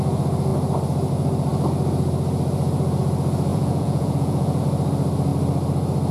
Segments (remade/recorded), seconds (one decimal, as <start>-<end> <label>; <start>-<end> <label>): 0.0-3.5 recorded; 3.5-4.6 remade; 4.6-6.1 recorded